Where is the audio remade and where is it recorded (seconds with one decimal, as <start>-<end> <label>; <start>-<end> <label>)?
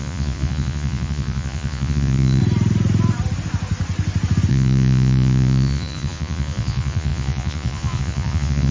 0.0-2.4 remade; 2.4-4.5 recorded; 4.5-8.7 remade